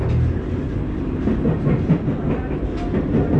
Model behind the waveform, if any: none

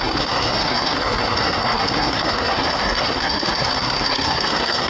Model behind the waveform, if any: codec, SNAC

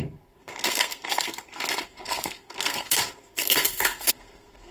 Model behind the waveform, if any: codec, SNAC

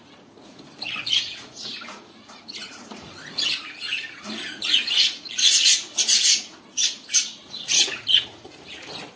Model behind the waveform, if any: vocoder, Vocos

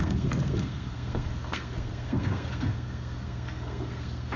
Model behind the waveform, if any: codec, SNAC